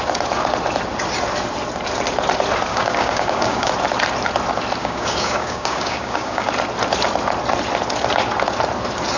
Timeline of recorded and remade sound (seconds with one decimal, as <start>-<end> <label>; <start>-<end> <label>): 0.0-2.7 recorded; 2.7-3.7 remade; 3.7-4.8 recorded; 4.8-6.5 remade; 6.5-9.2 recorded